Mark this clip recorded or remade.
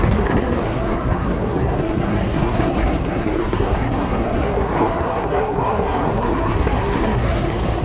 remade